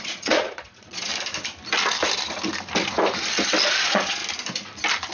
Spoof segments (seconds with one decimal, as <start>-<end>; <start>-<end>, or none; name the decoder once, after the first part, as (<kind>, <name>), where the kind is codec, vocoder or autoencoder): 0.0-1.1 (vocoder, Vocos); 3.8-4.2